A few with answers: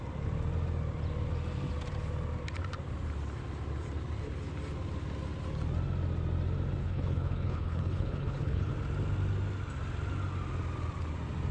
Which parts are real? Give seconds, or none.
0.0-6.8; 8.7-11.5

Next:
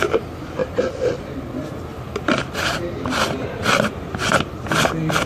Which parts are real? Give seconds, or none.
0.0-5.3

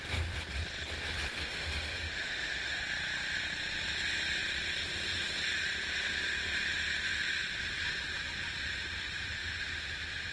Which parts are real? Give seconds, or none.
0.0-1.3; 2.8-10.3

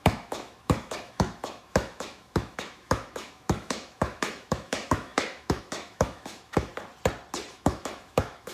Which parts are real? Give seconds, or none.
6.7-7.5

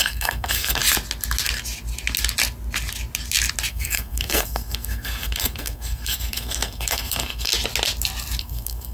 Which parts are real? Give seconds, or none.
0.8-3.7; 7.5-8.4

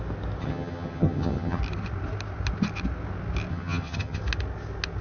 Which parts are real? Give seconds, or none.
0.0-0.4; 1.6-3.5; 4.2-5.0

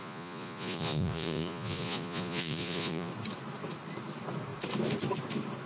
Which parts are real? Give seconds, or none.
3.1-5.7

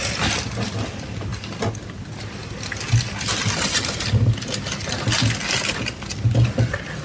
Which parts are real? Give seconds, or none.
0.0-1.3; 1.9-7.0